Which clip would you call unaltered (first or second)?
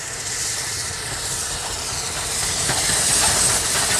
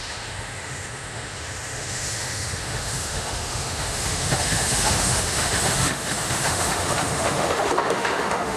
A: first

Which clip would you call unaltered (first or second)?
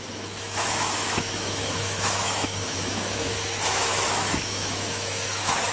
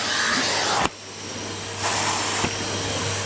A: second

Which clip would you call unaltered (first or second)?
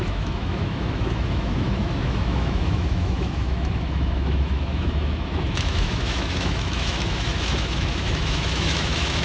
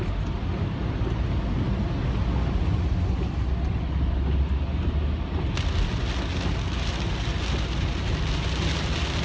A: second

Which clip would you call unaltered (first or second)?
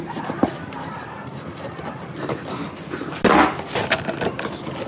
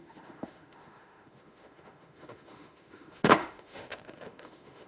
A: first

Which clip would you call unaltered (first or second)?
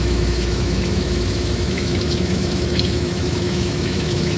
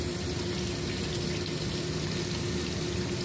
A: second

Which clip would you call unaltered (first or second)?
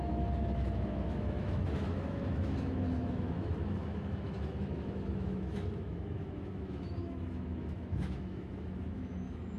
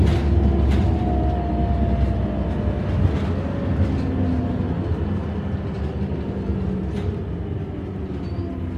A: second